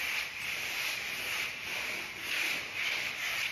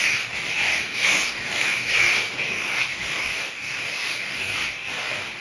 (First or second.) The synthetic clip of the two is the second